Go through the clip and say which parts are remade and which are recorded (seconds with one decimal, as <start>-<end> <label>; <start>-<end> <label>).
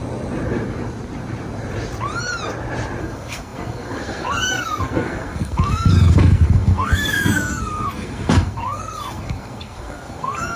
0.0-3.0 recorded; 3.0-10.6 remade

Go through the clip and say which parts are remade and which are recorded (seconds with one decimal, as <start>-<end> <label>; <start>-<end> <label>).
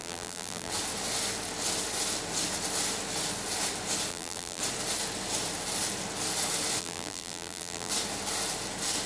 0.0-0.7 remade; 0.7-4.1 recorded; 4.1-4.6 remade; 4.6-6.8 recorded; 6.8-7.9 remade; 7.9-9.1 recorded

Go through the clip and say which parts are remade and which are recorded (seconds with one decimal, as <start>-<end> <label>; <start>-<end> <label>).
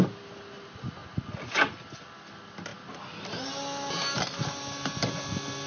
0.0-5.7 recorded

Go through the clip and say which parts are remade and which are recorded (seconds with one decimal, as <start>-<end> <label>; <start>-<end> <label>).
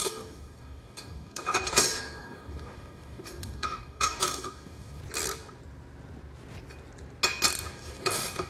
0.0-5.0 remade; 5.0-7.7 recorded; 7.7-8.5 remade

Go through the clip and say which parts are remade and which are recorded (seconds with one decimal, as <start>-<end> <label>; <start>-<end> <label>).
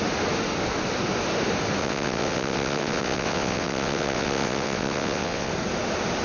0.0-1.8 recorded; 1.8-5.5 remade; 5.5-6.2 recorded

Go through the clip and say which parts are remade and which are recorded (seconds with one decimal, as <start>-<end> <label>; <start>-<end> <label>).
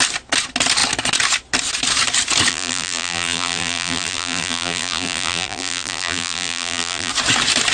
0.0-2.5 recorded; 2.5-7.1 remade; 7.1-7.7 recorded